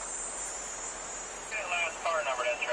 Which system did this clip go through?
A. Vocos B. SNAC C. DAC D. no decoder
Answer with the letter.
D